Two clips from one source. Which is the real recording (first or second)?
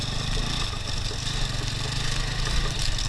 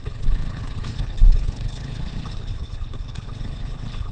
first